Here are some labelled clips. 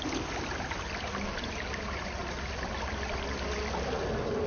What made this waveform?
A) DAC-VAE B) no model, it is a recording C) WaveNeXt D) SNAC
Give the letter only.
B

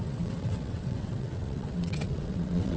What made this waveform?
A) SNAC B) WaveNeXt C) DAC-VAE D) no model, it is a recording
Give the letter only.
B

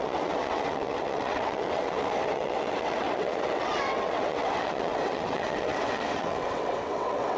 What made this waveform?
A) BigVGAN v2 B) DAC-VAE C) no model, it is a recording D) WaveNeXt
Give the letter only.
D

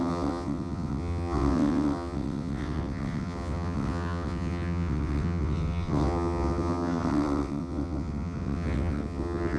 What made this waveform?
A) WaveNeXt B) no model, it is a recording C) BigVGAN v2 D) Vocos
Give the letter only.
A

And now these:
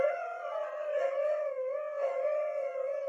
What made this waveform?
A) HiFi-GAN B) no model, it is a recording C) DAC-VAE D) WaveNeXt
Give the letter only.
D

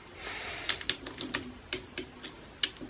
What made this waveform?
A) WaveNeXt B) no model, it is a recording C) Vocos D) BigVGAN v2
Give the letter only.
B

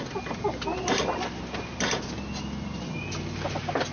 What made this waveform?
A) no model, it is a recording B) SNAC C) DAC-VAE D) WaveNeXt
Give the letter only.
A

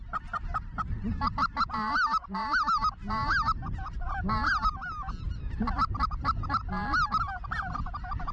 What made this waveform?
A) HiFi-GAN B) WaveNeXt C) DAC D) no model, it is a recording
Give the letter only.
D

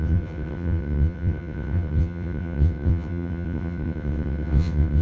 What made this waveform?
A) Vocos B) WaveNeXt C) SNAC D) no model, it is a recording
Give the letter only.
B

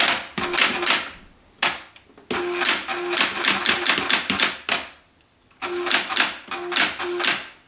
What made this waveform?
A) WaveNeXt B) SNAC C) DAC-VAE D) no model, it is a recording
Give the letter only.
D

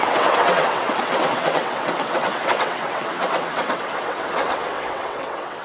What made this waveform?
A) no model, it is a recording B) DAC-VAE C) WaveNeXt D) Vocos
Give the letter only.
C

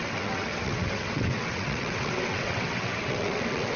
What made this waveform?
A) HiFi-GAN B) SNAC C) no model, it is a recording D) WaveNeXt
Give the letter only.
D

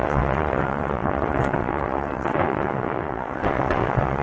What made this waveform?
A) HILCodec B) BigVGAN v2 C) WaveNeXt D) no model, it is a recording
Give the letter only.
C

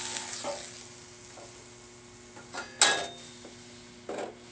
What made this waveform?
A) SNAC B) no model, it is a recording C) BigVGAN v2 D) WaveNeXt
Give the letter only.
B